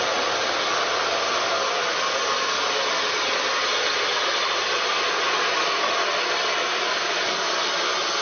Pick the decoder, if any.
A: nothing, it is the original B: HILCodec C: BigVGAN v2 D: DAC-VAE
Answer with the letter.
A